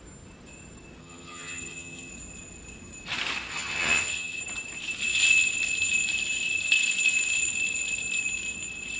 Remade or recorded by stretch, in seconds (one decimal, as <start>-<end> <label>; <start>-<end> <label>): 0.0-1.0 recorded; 1.0-2.1 remade; 2.1-3.5 recorded; 3.5-4.4 remade; 4.4-9.0 recorded